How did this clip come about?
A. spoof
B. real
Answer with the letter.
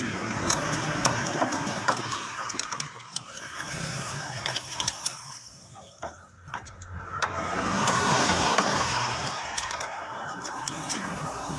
A